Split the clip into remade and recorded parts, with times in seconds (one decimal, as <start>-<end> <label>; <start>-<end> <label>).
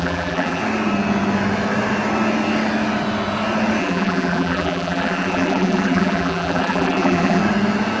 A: 0.0-0.6 remade; 0.6-3.8 recorded; 3.8-7.4 remade; 7.4-8.0 recorded